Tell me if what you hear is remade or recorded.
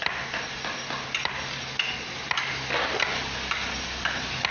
recorded